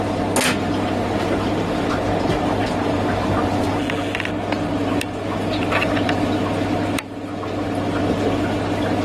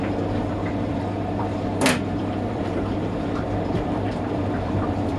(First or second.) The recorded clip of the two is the first